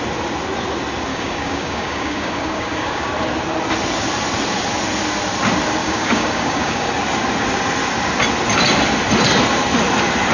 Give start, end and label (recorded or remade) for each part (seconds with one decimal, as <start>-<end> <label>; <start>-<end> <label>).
0.0-1.1 recorded; 1.1-3.1 remade; 3.1-5.8 recorded; 5.8-6.9 remade; 6.9-10.3 recorded